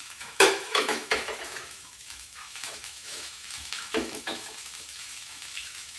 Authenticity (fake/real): fake